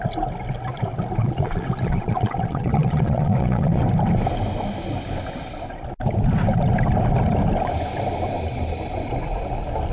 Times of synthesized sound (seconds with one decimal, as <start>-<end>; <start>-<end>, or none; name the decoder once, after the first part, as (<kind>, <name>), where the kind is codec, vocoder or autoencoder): 1.2-3.8 (vocoder, Vocos)